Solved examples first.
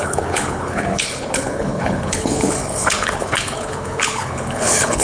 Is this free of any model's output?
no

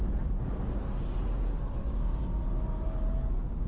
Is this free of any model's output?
yes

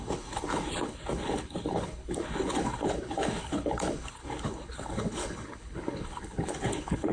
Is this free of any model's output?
no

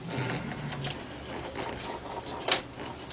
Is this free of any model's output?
yes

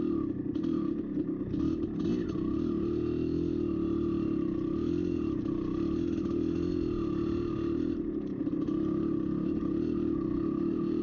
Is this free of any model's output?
yes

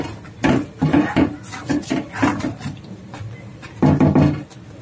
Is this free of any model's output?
yes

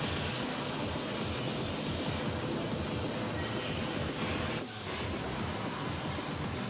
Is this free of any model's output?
yes